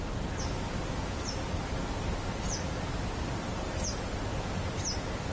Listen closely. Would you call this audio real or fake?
real